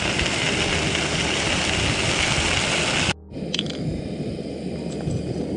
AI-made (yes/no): no